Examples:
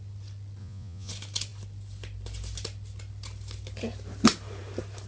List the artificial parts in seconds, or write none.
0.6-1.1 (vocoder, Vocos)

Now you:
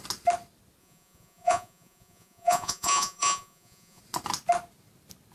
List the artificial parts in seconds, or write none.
0.8-4.0 (vocoder, Vocos)

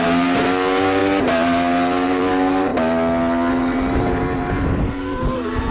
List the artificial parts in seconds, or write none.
0.0-2.7 (vocoder, BigVGAN v2); 3.5-5.7

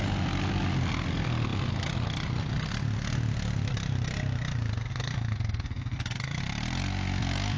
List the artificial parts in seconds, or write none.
4.9-6.4 (codec, SNAC)